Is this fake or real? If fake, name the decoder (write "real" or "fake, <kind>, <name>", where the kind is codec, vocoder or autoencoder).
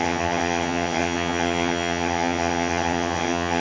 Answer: fake, vocoder, HiFi-GAN